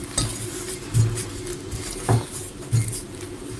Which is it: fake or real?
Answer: real